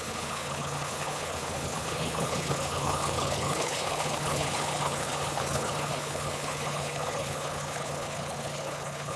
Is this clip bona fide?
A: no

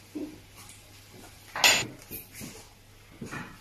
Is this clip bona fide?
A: yes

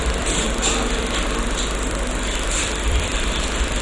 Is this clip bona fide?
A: no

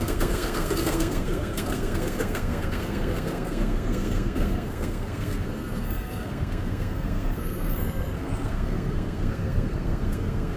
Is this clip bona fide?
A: no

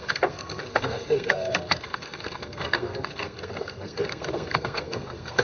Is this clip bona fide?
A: no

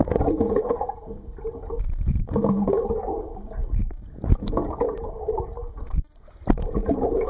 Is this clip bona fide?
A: yes